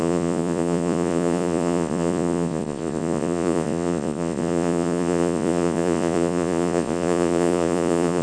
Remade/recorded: remade